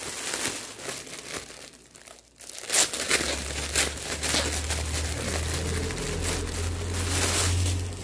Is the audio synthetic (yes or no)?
no